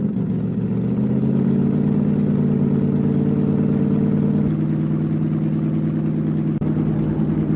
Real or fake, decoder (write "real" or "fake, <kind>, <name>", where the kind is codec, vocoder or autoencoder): real